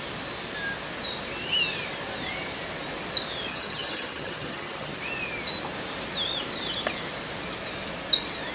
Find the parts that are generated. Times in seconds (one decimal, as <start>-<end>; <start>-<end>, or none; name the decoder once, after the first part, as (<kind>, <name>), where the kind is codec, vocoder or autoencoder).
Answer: 3.5-5.0 (vocoder, HiFi-GAN)